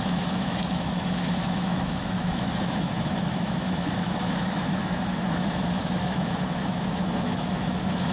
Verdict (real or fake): fake